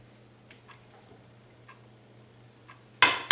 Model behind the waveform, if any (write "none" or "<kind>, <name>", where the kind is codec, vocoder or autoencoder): none